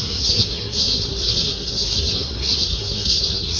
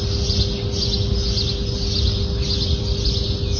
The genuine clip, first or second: second